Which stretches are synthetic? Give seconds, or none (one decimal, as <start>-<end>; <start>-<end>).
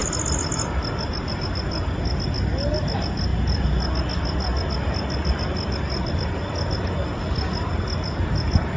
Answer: none